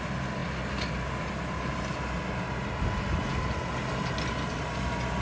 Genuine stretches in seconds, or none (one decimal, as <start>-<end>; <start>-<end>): 0.0-5.2